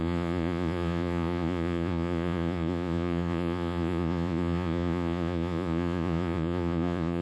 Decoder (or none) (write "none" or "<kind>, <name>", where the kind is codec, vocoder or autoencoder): vocoder, Vocos